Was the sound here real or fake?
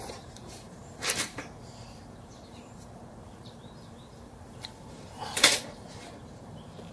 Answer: fake